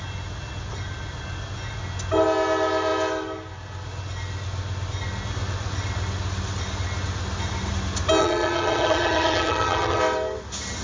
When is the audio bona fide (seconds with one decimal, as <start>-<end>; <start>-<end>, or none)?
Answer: 0.0-8.2; 10.0-10.8

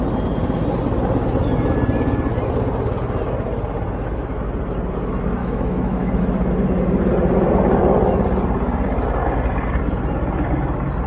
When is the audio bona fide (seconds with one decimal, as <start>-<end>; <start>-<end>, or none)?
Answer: 0.0-5.4; 6.2-11.1

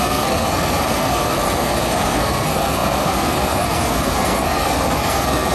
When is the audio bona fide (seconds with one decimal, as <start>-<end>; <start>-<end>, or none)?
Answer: none

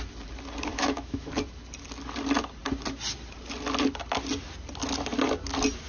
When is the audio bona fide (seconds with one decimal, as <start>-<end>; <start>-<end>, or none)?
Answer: 0.0-0.7; 1.3-5.9